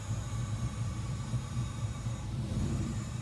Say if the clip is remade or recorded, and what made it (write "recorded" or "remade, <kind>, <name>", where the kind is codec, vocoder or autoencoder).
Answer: remade, vocoder, BigVGAN v2